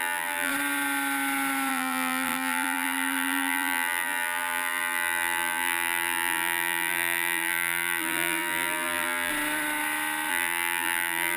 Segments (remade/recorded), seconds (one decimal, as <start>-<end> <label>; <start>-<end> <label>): 0.0-0.5 remade; 0.5-1.7 recorded; 1.7-9.3 remade; 9.3-10.3 recorded; 10.3-11.4 remade